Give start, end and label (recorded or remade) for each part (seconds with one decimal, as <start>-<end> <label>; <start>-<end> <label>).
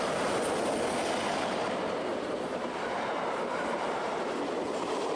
0.0-1.3 recorded; 1.3-4.4 remade; 4.4-5.2 recorded